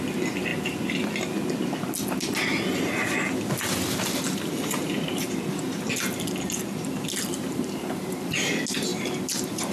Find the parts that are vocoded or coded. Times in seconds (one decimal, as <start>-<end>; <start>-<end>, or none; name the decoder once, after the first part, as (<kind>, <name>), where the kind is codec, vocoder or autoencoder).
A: 7.3-8.5 (vocoder, BigVGAN v2)